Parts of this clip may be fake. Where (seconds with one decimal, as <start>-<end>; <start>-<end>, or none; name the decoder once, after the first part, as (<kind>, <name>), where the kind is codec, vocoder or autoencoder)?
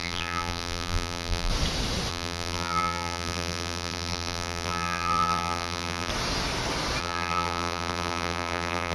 0.0-1.5 (vocoder, BigVGAN v2); 2.1-6.1; 7.0-8.9